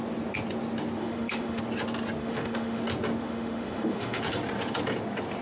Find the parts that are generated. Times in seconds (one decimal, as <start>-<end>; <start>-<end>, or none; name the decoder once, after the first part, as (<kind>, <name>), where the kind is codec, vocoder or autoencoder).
1.0-1.6 (autoencoder, DAC-VAE); 2.2-2.8; 3.2-4.2